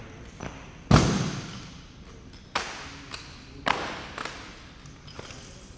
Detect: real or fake real